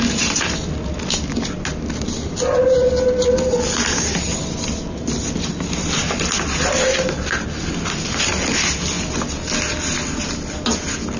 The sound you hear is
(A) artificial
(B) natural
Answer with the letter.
B